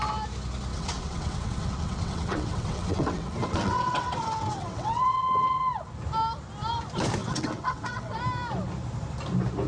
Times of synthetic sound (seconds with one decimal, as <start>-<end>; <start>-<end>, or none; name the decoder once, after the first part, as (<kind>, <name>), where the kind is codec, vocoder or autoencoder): 0.7-5.9 (vocoder, WaveNeXt); 7.2-8.2